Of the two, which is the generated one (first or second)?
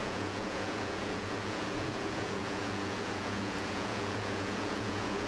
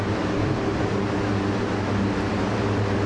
first